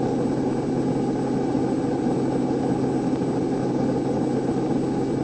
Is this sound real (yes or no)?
yes